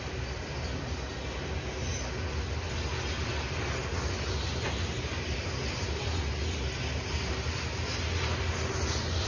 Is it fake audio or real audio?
real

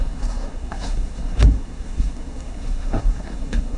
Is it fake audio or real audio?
fake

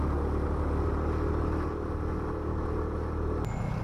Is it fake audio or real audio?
real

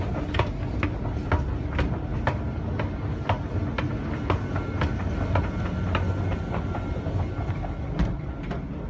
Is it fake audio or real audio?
real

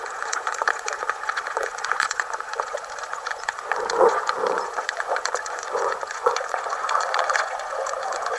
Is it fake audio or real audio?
fake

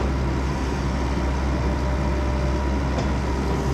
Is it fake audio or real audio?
real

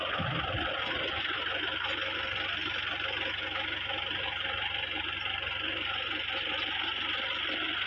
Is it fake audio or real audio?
real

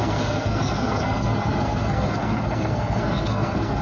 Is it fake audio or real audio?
fake